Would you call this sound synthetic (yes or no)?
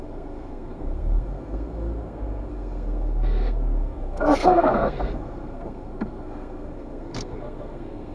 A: yes